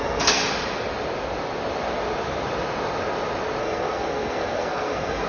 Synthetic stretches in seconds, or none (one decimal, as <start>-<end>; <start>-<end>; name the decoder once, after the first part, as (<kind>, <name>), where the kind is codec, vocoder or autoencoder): 0.0-0.4 (codec, SNAC); 3.6-5.3